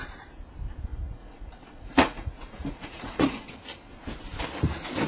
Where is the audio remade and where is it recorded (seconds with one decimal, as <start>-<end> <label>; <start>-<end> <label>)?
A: 0.0-0.9 recorded; 0.9-3.5 remade; 3.5-5.1 recorded